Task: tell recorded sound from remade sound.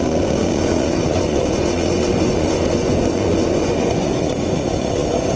remade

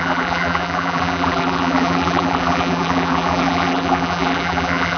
remade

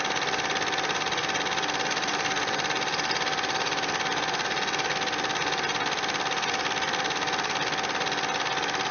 recorded